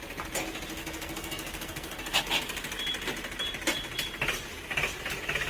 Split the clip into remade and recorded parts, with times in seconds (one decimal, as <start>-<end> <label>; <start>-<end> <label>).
0.0-0.8 recorded; 0.8-2.2 remade; 2.2-5.5 recorded